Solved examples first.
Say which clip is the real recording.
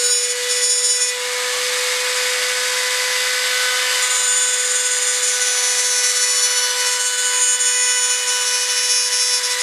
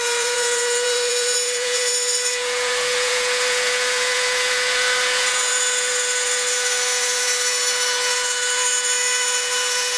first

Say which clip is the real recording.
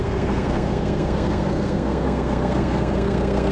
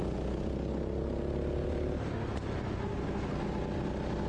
second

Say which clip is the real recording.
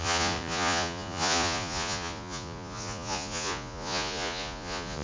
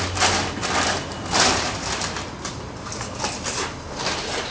second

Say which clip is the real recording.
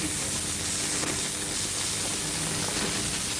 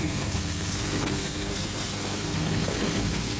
first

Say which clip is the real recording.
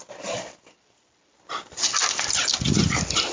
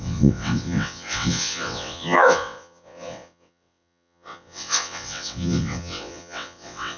first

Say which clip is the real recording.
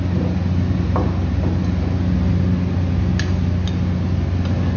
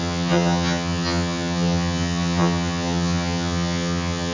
first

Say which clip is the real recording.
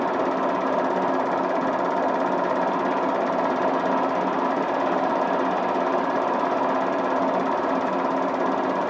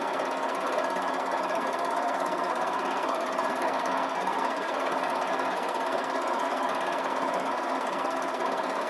first